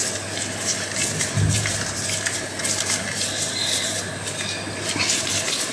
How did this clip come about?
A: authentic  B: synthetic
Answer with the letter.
A